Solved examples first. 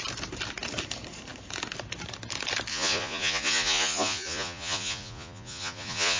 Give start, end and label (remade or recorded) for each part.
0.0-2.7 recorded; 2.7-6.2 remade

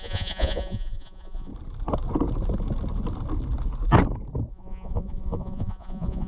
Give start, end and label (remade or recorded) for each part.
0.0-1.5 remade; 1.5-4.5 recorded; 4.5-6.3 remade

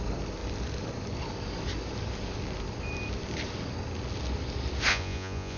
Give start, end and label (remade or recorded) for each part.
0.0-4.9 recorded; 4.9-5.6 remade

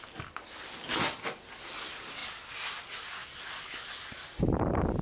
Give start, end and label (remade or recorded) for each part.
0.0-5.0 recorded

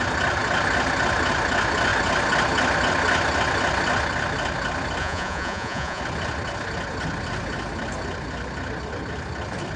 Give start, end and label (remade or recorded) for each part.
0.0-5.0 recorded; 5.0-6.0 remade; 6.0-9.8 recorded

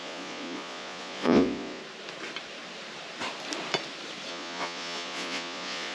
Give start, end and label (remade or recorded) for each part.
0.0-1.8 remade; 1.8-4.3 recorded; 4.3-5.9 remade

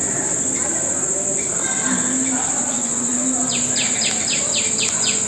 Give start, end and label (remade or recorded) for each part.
0.0-2.6 recorded; 2.6-3.1 remade; 3.1-4.8 recorded; 4.8-5.3 remade